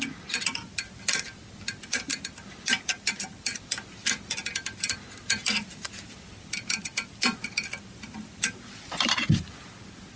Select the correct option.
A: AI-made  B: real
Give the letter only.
B